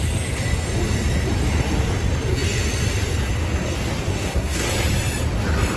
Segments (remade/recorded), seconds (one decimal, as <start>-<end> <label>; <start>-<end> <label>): 0.0-4.1 recorded; 4.1-4.7 remade; 4.7-5.8 recorded